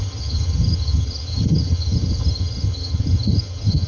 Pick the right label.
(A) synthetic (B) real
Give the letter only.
A